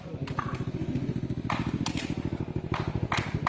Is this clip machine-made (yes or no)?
no